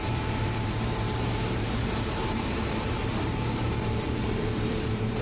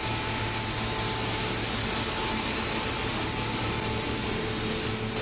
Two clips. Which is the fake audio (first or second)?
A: first